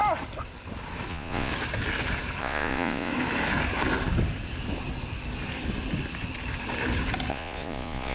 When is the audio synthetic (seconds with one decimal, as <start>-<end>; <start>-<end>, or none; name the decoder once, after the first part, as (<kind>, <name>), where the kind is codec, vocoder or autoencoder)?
1.1-1.5 (vocoder, Vocos); 2.4-3.1; 7.3-8.1